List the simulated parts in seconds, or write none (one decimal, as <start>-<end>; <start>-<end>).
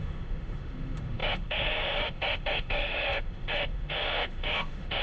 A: 0.0-5.0